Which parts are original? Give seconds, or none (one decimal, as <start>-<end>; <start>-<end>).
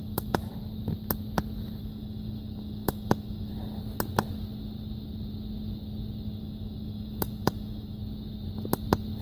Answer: 0.5-1.8; 3.5-6.4; 8.0-9.2